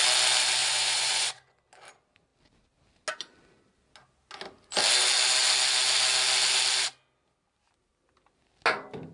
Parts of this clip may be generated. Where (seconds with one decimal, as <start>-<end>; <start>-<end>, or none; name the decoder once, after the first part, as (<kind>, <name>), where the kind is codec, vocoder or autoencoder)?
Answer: 0.6-1.6 (vocoder, Vocos)